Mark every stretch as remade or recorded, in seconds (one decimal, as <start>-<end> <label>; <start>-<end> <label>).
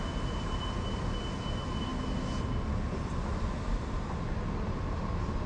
0.0-5.5 recorded